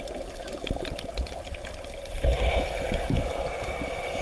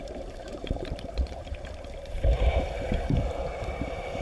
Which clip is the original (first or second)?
first